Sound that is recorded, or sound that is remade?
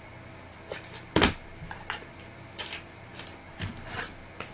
recorded